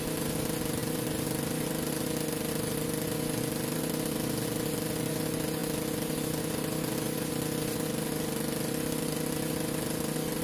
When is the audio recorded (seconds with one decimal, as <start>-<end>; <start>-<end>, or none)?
0.0-10.4